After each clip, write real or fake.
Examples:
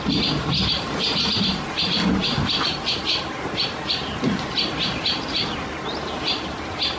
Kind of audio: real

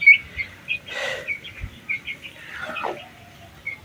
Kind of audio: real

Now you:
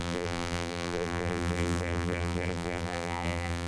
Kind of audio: fake